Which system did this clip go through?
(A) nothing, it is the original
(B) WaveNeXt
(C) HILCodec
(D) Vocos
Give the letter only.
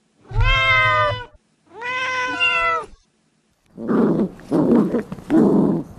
A